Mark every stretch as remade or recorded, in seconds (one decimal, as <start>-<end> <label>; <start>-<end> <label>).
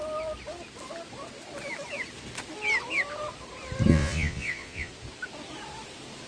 0.0-3.9 recorded; 3.9-4.9 remade; 4.9-6.3 recorded